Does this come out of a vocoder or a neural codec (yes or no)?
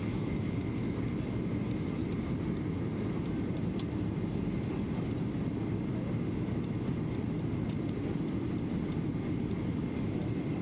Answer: no